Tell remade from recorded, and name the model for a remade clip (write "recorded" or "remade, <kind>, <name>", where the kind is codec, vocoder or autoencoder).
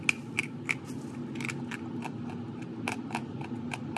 recorded